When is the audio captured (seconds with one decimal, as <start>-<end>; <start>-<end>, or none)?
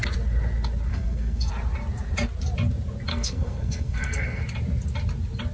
0.0-0.9; 1.5-3.1; 4.4-5.5